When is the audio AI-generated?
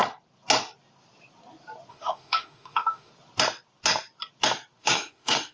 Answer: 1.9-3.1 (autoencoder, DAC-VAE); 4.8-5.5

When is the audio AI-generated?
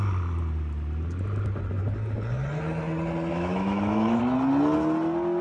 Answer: 3.3-4.2 (autoencoder, DAC-VAE)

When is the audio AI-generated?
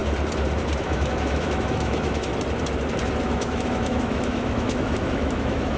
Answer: 0.8-2.3 (autoencoder, DAC-VAE); 3.2-5.8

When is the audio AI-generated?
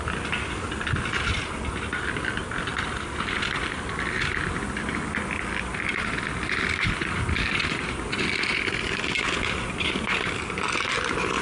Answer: none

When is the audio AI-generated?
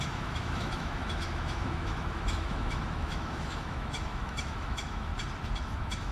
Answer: 0.0-5.1 (autoencoder, DAC-VAE); 5.6-6.1